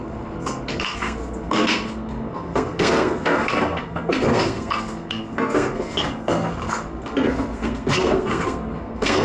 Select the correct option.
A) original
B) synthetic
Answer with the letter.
B